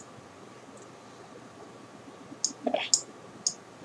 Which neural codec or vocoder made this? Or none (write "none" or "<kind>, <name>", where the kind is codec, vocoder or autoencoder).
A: none